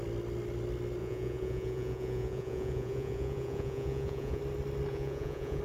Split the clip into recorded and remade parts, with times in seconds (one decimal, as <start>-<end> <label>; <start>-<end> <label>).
0.0-1.0 recorded; 1.0-4.4 remade; 4.4-4.9 recorded; 4.9-5.6 remade